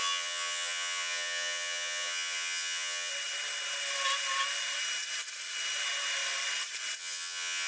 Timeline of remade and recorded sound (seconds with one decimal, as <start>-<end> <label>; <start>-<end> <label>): 0.0-3.1 remade; 3.1-7.0 recorded; 7.0-7.7 remade